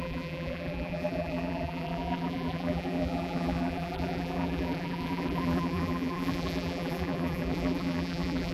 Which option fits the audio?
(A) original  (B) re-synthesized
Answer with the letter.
B